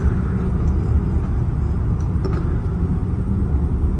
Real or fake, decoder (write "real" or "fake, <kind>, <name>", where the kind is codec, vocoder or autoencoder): real